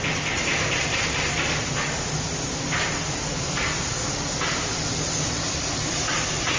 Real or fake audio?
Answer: real